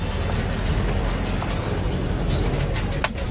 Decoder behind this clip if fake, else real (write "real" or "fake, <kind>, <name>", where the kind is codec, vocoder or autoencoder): real